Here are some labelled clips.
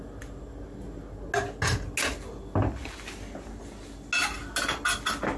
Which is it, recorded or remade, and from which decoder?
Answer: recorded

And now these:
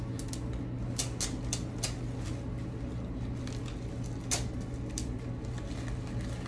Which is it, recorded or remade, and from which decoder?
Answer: recorded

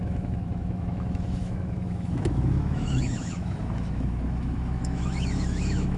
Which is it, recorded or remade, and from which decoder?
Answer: remade, autoencoder, DAC-VAE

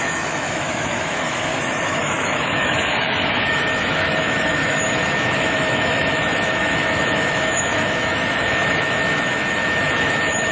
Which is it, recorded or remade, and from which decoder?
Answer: remade, autoencoder, DAC-VAE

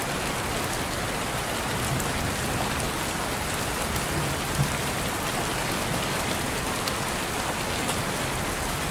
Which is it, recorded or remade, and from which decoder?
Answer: recorded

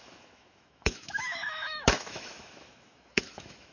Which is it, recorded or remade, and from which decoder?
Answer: remade, autoencoder, DAC-VAE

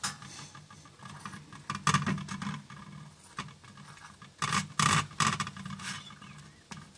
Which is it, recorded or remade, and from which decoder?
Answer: recorded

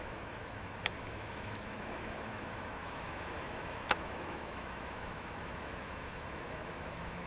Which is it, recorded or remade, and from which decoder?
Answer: remade, autoencoder, DAC-VAE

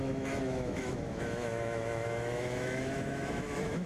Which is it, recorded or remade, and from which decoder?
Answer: remade, autoencoder, DAC-VAE